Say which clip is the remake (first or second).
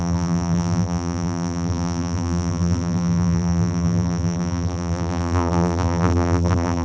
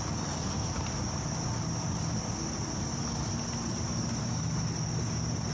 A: first